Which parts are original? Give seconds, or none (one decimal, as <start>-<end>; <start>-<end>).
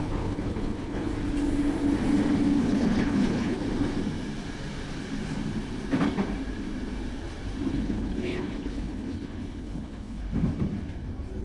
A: 1.1-2.6; 3.6-7.7; 10.2-11.4